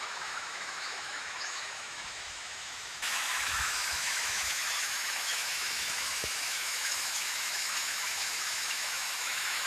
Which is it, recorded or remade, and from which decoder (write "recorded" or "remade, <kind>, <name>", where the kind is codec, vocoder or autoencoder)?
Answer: remade, autoencoder, DAC-VAE